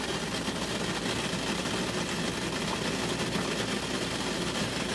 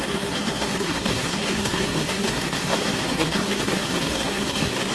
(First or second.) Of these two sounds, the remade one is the second